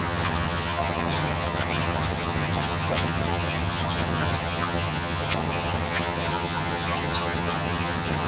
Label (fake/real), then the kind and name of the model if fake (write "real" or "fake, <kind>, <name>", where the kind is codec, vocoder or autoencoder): fake, vocoder, HiFi-GAN